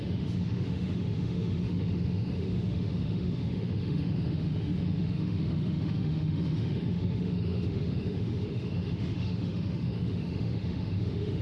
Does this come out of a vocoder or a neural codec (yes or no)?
yes